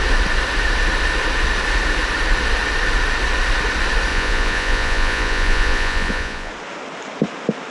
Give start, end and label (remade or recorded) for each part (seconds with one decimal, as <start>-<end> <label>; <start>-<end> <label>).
0.0-4.1 recorded; 4.1-6.5 remade; 6.5-7.7 recorded